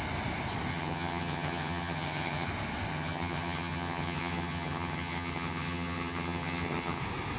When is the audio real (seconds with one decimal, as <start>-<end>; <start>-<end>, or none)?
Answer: 0.0-0.7; 2.5-2.9; 7.0-7.4